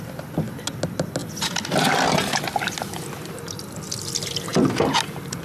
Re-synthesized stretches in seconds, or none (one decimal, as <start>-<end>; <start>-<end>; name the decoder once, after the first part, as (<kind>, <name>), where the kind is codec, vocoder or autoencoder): none

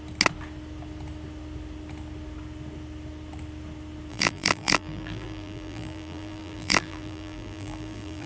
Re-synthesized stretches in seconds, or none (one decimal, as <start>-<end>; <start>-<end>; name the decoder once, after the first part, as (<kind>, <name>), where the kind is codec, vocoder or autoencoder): 4.1-8.3 (vocoder, BigVGAN v2)